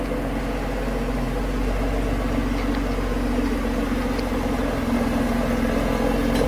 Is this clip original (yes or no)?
yes